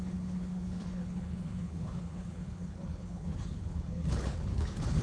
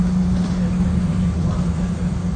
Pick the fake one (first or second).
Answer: first